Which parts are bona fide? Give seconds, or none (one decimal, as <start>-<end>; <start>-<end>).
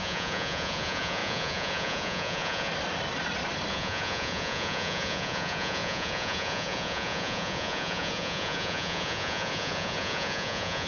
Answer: 2.7-3.7